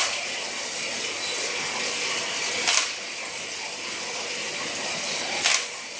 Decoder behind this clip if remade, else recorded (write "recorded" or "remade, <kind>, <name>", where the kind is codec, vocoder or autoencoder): recorded